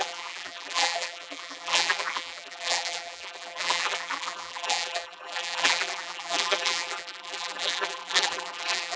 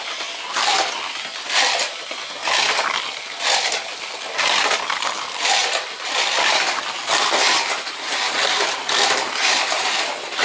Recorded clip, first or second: second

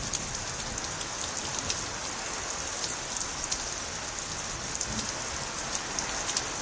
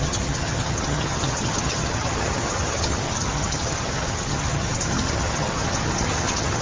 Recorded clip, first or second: first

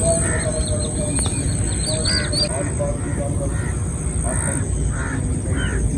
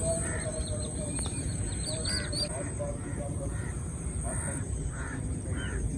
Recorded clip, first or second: first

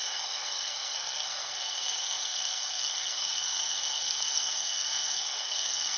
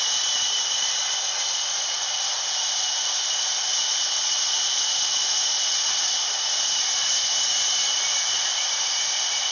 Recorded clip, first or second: second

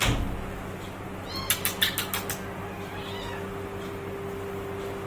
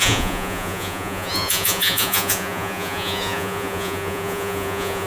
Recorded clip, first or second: first